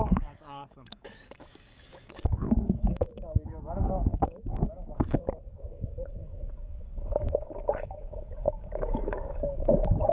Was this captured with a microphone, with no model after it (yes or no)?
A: no